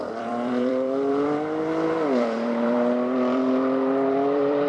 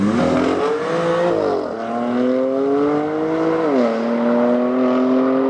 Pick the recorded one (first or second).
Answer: second